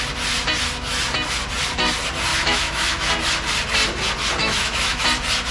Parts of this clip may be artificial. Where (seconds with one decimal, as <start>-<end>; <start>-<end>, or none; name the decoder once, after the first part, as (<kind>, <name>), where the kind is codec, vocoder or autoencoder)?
2.3-3.1 (autoencoder, DAC-VAE); 4.4-5.0